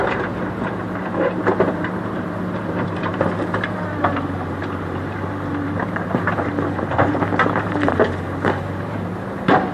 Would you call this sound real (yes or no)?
no